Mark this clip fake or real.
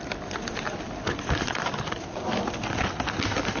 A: real